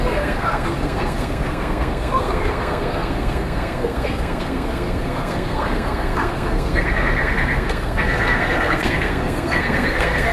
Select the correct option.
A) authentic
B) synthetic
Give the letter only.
B